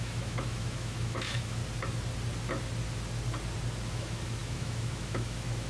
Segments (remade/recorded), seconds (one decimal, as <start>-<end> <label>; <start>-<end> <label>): 0.0-1.6 remade; 1.6-3.9 recorded; 3.9-5.7 remade